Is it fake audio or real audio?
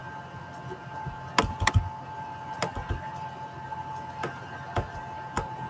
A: real